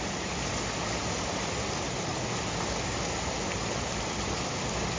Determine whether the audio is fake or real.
real